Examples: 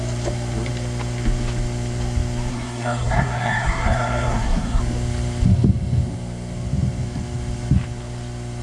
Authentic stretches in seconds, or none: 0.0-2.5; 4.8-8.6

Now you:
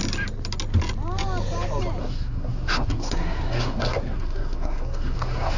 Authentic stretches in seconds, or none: 0.0-2.0

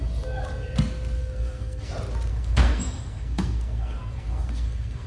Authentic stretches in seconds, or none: 0.0-1.2; 1.9-2.3

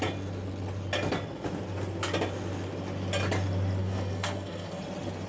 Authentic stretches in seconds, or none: 0.0-3.8; 4.8-5.3